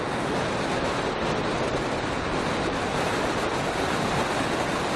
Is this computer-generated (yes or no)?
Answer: no